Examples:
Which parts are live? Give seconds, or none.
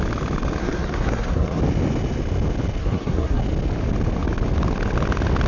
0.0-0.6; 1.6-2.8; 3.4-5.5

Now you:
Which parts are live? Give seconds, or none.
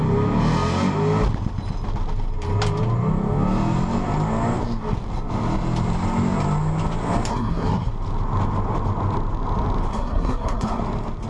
0.0-7.3; 7.9-9.9; 10.8-11.3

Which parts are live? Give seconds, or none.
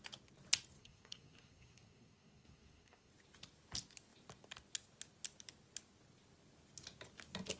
0.0-0.8; 3.1-7.6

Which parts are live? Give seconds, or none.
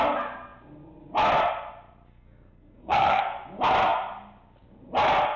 0.0-2.1; 3.2-5.4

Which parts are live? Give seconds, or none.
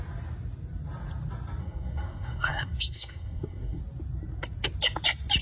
0.0-1.6; 3.8-5.4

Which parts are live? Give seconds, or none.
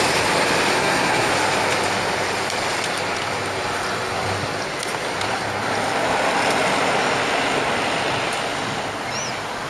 0.0-0.8; 1.3-9.7